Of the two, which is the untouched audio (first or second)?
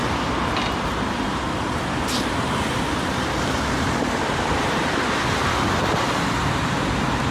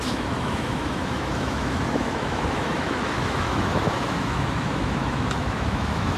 first